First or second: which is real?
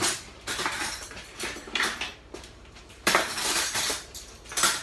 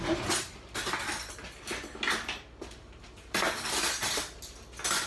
second